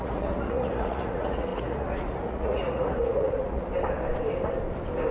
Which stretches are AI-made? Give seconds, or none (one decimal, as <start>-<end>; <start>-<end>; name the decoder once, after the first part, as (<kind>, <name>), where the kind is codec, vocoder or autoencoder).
0.0-3.7 (vocoder, Vocos)

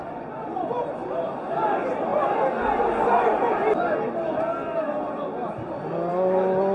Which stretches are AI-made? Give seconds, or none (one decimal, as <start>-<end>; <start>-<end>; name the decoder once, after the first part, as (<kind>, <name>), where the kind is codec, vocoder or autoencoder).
none